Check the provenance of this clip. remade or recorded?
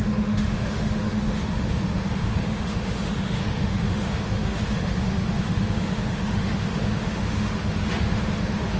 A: remade